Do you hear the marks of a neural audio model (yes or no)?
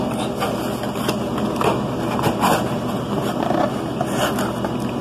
no